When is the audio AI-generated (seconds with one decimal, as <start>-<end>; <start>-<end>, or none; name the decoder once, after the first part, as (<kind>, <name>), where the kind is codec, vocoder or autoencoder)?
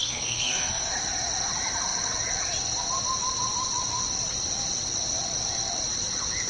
0.0-0.9 (codec, SNAC)